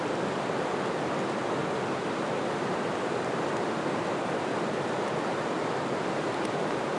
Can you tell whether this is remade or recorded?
recorded